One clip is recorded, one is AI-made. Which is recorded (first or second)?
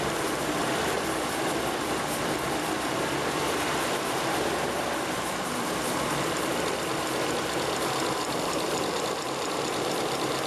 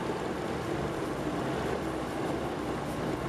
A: second